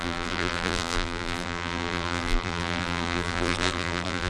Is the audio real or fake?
fake